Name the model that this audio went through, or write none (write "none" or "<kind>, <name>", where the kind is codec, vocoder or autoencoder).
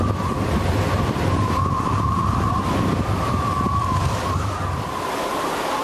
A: vocoder, BigVGAN v2